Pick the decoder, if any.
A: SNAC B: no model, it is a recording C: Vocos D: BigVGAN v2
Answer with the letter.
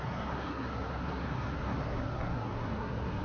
A